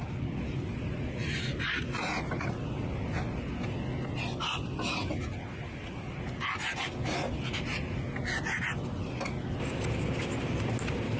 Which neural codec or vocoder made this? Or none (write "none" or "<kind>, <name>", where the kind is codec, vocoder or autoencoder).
none